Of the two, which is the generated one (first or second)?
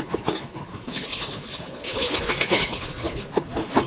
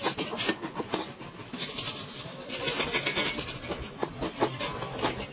first